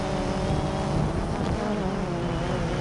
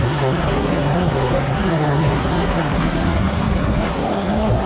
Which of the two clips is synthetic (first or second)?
second